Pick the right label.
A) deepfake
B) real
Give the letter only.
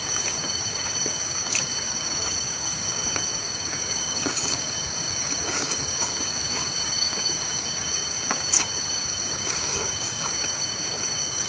A